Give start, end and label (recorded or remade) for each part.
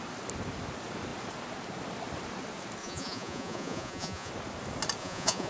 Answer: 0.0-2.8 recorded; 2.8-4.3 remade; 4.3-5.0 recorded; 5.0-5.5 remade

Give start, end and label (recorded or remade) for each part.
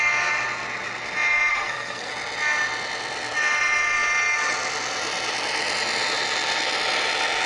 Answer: 0.0-1.5 recorded; 1.5-2.1 remade; 2.1-7.5 recorded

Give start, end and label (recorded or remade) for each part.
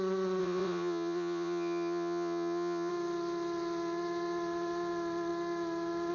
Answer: 0.0-0.4 recorded; 0.4-2.9 remade; 2.9-6.1 recorded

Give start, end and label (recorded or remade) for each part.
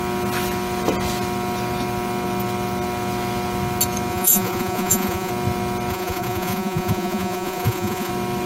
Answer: 0.0-4.1 recorded; 4.1-5.3 remade; 5.3-5.9 recorded; 5.9-8.1 remade; 8.1-8.5 recorded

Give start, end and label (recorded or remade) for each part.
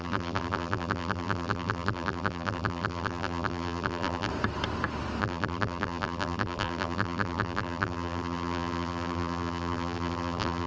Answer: 0.0-4.3 remade; 4.3-5.2 recorded; 5.2-10.7 remade